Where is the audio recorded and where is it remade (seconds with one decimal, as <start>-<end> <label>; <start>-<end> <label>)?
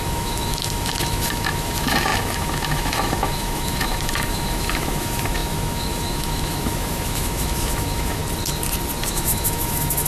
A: 0.0-8.2 remade; 8.2-9.1 recorded; 9.1-10.1 remade